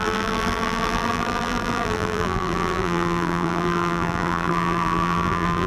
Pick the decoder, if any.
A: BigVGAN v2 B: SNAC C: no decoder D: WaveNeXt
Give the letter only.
A